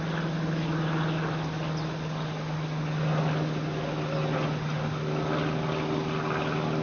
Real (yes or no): yes